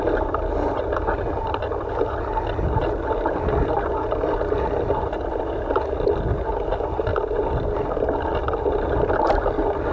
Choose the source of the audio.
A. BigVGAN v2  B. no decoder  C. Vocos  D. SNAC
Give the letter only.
B